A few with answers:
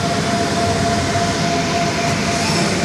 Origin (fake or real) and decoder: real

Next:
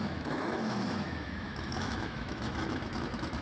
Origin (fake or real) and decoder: fake, autoencoder, DAC-VAE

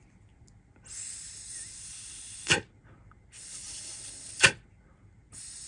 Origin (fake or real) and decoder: real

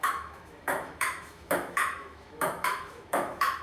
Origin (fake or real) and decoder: fake, autoencoder, DAC-VAE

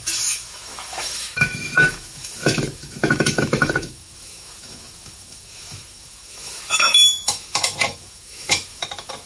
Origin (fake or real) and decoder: fake, autoencoder, DAC-VAE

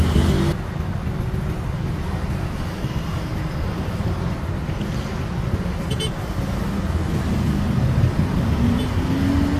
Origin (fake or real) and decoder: real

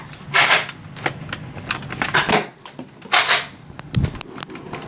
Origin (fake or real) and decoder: real